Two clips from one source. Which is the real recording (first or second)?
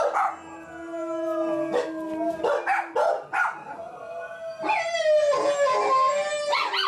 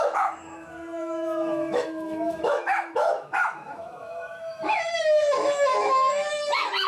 first